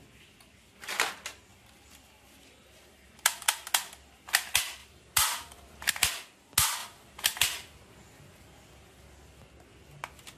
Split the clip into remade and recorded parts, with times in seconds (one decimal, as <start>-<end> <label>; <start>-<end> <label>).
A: 0.0-1.5 recorded; 1.5-3.5 remade; 3.5-4.8 recorded; 4.8-5.9 remade; 5.9-6.8 recorded; 6.8-7.4 remade; 7.4-10.4 recorded